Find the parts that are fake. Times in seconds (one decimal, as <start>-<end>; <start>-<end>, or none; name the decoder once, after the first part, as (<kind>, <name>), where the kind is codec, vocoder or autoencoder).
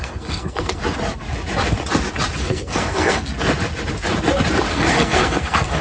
0.0-0.8 (codec, SNAC); 2.4-3.3; 4.7-5.8